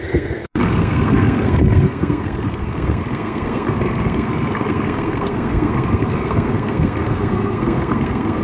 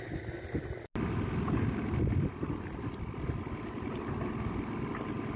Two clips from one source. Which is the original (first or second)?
second